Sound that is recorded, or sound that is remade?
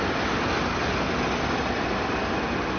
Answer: recorded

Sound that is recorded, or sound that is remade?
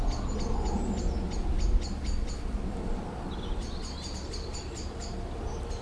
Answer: recorded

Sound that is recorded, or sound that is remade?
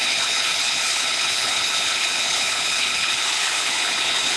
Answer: remade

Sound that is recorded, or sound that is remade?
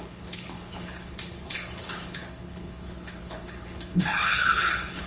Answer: remade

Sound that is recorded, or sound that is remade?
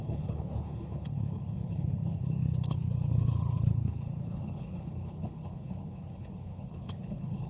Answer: remade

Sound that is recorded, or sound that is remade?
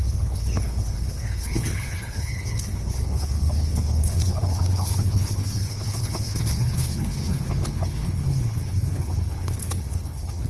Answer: remade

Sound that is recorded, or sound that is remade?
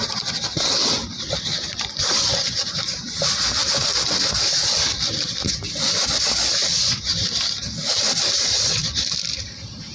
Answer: recorded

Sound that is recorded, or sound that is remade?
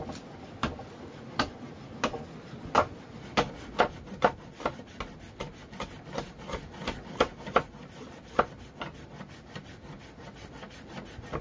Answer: recorded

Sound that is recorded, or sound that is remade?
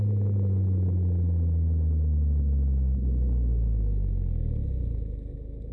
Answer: recorded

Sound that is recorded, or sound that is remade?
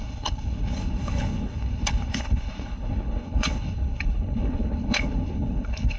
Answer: remade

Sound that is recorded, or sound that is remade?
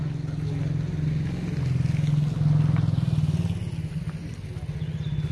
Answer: recorded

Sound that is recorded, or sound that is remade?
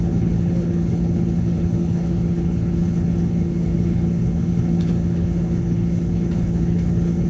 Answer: remade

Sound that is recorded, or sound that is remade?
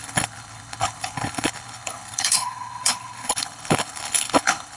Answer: remade